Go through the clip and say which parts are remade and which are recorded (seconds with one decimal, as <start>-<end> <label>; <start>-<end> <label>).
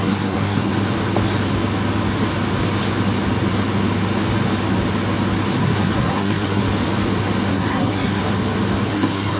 0.0-0.7 remade; 0.7-5.6 recorded; 5.6-6.6 remade; 6.6-7.5 recorded; 7.5-8.2 remade; 8.2-8.9 recorded; 8.9-9.4 remade